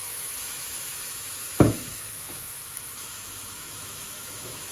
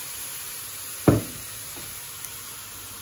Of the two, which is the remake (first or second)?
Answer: first